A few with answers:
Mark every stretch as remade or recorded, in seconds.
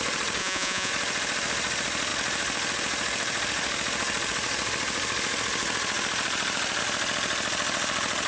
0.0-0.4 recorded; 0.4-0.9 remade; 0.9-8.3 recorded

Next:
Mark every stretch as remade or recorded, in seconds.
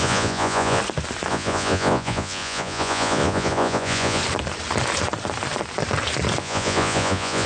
0.0-0.8 remade; 0.8-1.3 recorded; 1.3-4.2 remade; 4.2-6.4 recorded; 6.4-7.5 remade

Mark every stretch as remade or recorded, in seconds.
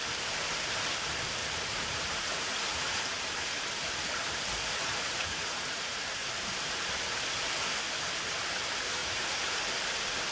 0.0-1.4 recorded; 1.4-3.0 remade; 3.0-4.6 recorded; 4.6-6.3 remade; 6.3-9.0 recorded; 9.0-9.6 remade; 9.6-10.3 recorded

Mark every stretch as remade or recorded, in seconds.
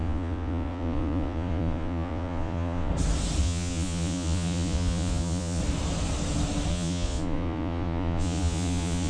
0.0-2.9 remade; 2.9-3.4 recorded; 3.4-5.6 remade; 5.6-6.7 recorded; 6.7-9.1 remade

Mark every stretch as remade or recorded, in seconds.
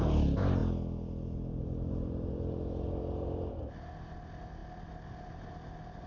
0.0-6.1 recorded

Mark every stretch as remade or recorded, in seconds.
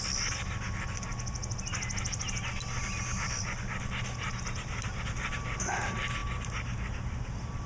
0.0-7.7 recorded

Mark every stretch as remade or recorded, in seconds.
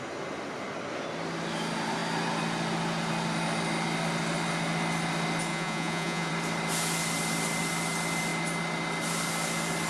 0.0-5.5 recorded; 5.5-6.3 remade; 6.3-9.9 recorded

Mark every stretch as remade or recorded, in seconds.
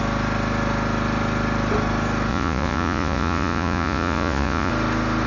0.0-2.3 recorded; 2.3-4.7 remade; 4.7-5.3 recorded